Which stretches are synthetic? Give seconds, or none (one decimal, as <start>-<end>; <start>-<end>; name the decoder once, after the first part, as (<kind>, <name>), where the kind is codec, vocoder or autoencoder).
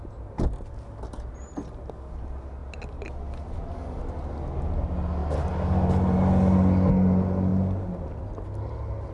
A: none